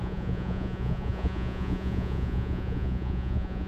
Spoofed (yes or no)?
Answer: yes